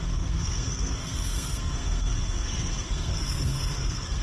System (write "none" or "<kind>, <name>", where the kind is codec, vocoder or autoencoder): codec, SNAC